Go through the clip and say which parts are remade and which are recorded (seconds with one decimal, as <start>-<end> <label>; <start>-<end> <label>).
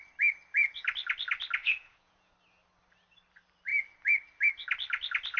0.0-1.6 recorded; 1.6-2.3 remade; 2.3-5.4 recorded